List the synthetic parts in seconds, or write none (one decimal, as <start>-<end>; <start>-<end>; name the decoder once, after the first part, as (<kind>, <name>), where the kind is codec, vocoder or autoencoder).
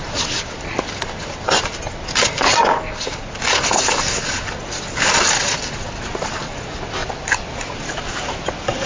5.4-5.9 (vocoder, BigVGAN v2); 7.0-7.6